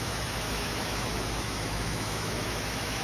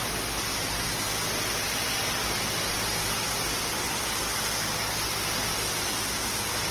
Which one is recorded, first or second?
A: second